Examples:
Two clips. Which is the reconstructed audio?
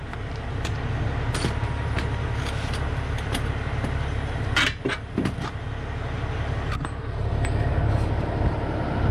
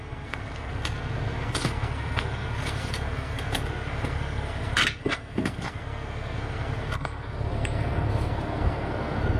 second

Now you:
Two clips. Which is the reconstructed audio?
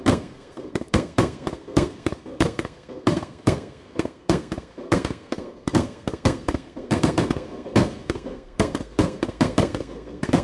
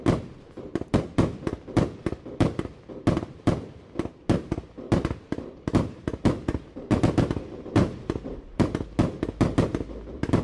first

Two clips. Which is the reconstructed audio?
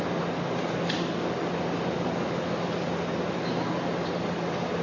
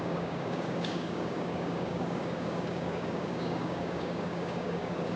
second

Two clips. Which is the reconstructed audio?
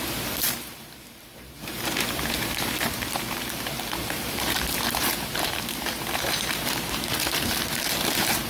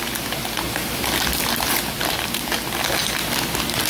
first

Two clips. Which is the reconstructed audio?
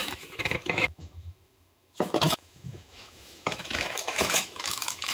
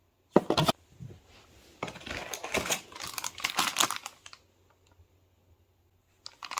first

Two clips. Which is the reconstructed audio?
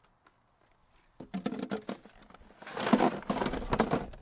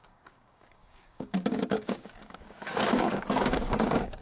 second